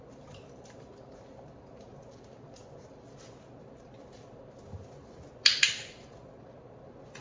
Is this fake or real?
real